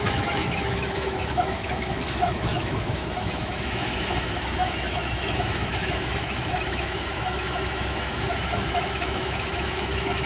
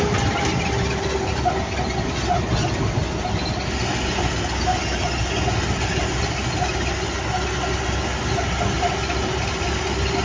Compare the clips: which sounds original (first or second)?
second